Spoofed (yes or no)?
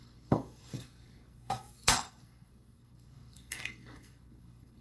yes